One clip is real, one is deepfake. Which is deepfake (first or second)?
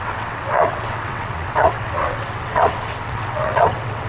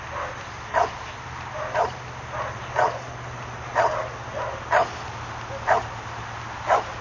first